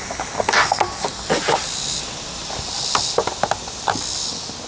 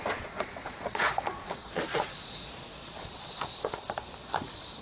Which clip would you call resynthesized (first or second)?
second